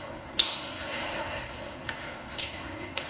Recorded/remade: remade